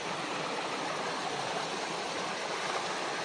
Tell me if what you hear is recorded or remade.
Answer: recorded